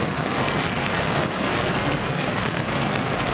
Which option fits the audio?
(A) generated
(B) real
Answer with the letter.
A